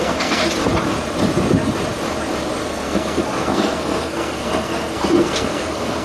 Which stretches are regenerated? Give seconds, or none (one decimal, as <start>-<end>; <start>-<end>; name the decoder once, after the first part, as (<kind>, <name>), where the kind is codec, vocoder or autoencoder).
0.0-0.4 (codec, SNAC); 2.6-6.0